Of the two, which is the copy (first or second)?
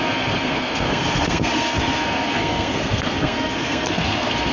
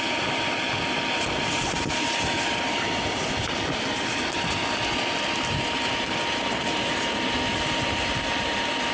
first